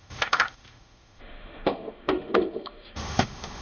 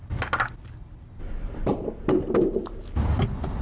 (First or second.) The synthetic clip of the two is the first